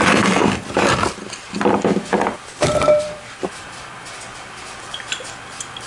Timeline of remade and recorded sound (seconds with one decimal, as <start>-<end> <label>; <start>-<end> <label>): 0.0-2.1 recorded; 2.1-3.9 remade; 3.9-4.3 recorded; 4.3-5.3 remade; 5.3-5.9 recorded

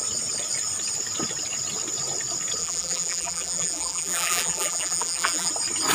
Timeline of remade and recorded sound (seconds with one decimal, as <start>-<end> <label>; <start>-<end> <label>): 0.0-2.6 recorded; 2.6-5.5 remade; 5.5-5.9 recorded

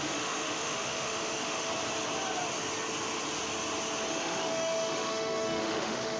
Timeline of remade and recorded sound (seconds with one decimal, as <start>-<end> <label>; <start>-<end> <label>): 0.0-1.7 remade; 1.7-4.1 recorded; 4.1-6.2 remade

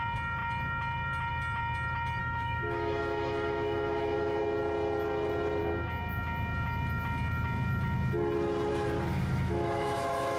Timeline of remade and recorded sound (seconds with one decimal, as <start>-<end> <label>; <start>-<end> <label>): 0.0-2.2 recorded; 2.2-4.4 remade; 4.4-9.1 recorded; 9.1-10.4 remade

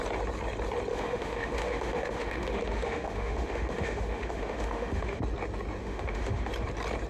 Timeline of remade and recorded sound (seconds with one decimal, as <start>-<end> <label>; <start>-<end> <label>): 0.0-0.9 recorded; 0.9-5.2 remade; 5.2-5.8 recorded; 5.8-6.5 remade; 6.5-7.1 recorded

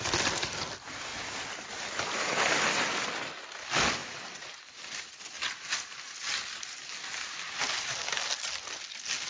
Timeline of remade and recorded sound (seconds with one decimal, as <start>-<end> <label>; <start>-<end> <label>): 0.0-9.3 recorded

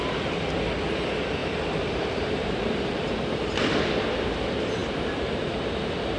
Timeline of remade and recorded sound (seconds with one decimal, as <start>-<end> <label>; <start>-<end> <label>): 0.0-1.4 recorded; 1.4-3.1 remade; 3.1-6.2 recorded